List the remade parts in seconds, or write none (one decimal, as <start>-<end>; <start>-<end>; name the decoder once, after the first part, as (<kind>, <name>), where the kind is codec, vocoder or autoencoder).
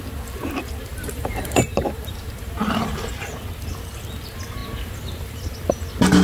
0.9-3.1 (vocoder, BigVGAN v2)